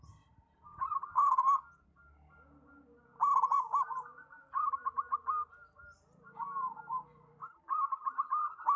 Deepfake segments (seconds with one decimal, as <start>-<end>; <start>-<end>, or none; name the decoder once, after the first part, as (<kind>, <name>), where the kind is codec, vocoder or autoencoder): 1.1-1.7 (codec, SNAC)